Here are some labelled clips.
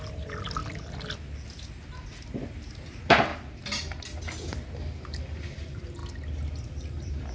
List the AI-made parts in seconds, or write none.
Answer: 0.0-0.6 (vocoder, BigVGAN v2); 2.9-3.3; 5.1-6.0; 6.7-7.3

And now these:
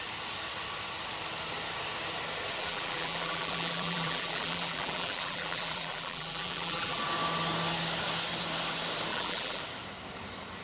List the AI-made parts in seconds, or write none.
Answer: 2.6-7.0 (vocoder, BigVGAN v2); 9.1-9.6